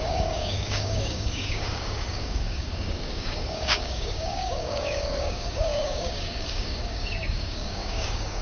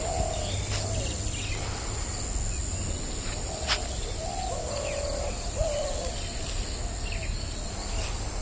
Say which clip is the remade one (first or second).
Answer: first